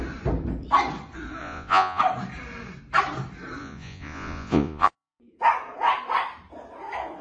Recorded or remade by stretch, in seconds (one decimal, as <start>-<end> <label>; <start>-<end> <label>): 0.0-1.4 recorded; 1.4-2.0 remade; 2.0-3.6 recorded; 3.6-5.2 remade; 5.2-7.2 recorded